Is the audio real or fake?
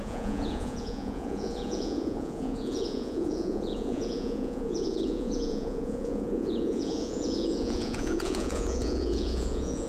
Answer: fake